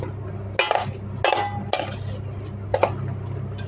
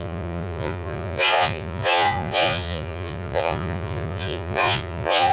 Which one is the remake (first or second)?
second